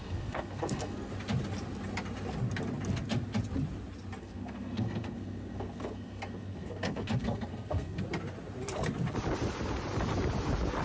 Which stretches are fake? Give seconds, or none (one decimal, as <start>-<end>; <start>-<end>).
0.0-1.1; 4.2-8.0